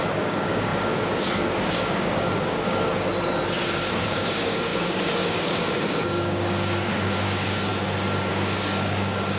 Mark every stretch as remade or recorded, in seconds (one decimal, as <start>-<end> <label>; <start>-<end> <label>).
0.0-3.1 remade; 3.1-3.6 recorded; 3.6-7.7 remade; 7.7-8.3 recorded; 8.3-9.4 remade